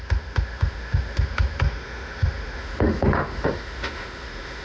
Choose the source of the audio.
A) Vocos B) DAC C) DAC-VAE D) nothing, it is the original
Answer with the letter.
C